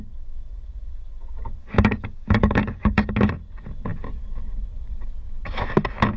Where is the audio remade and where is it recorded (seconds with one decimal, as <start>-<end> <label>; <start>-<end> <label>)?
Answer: 0.0-1.6 recorded; 1.6-3.1 remade; 3.1-6.2 recorded